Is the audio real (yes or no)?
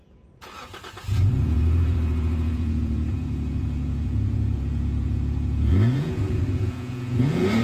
no